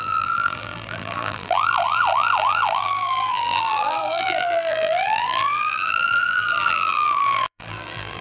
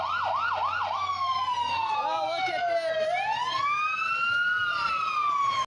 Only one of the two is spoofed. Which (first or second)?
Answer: first